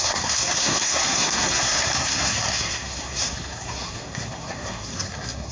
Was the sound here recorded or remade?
remade